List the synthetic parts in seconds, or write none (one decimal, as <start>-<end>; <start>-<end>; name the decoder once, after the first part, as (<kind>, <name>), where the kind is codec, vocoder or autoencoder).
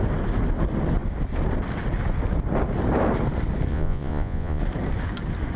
3.7-4.6 (vocoder, Vocos)